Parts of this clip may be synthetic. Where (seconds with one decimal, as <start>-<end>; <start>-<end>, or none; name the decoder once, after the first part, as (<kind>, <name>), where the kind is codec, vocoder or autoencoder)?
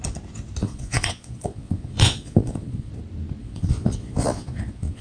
0.6-2.9 (vocoder, Vocos); 3.4-5.0